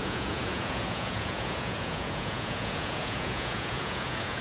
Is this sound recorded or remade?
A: remade